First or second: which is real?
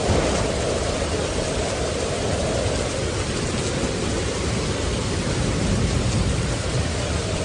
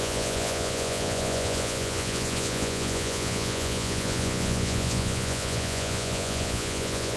first